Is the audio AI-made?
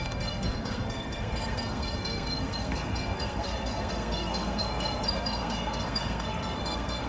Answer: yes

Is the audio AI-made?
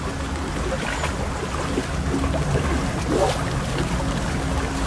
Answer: no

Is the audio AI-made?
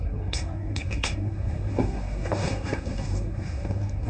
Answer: yes